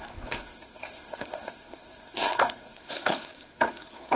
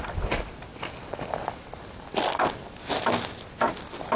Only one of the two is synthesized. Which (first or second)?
first